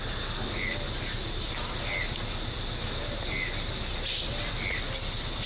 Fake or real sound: real